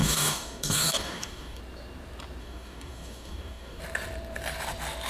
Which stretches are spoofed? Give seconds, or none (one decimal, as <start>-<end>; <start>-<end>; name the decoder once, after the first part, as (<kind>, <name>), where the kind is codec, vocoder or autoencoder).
0.0-1.6 (codec, DAC); 2.4-3.8